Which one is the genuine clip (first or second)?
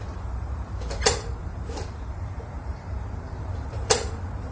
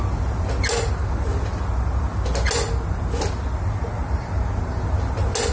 second